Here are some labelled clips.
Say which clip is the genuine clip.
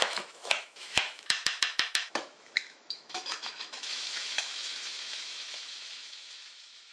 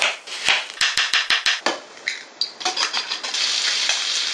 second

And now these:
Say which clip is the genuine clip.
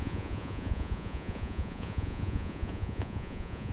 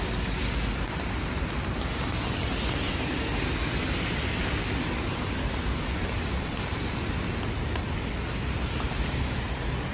second